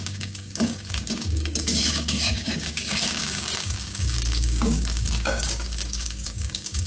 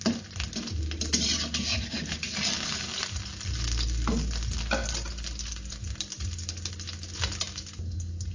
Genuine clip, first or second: second